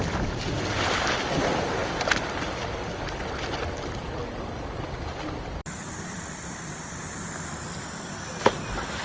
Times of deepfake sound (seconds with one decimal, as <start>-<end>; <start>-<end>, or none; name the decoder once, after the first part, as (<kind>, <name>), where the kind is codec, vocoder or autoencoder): none